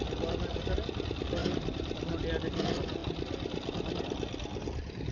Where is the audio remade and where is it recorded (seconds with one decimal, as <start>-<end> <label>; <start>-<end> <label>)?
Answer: 0.0-1.4 recorded; 1.4-2.2 remade; 2.2-5.1 recorded